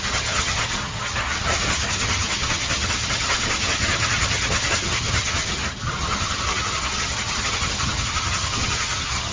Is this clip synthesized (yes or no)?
yes